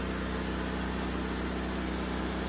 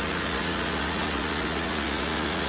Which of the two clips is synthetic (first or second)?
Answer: second